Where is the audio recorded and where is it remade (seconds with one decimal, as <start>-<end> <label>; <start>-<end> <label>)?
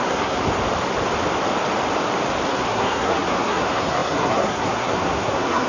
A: 0.0-0.4 remade; 0.4-2.5 recorded; 2.5-5.7 remade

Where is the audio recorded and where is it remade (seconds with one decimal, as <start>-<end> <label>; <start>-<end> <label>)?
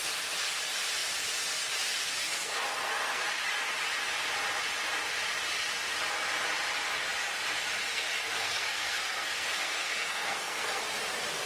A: 0.0-2.2 recorded; 2.2-3.3 remade; 3.3-7.9 recorded; 7.9-10.8 remade; 10.8-11.5 recorded